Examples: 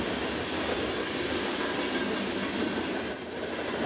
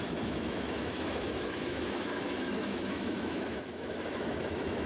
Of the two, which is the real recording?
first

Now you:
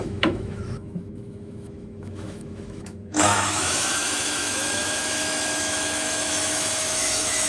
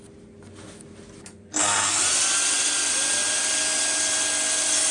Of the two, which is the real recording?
second